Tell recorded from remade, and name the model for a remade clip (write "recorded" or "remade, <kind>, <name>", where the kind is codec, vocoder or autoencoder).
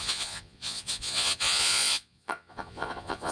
remade, vocoder, Vocos